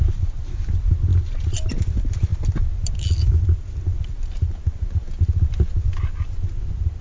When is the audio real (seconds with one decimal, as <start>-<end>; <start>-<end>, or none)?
0.0-7.0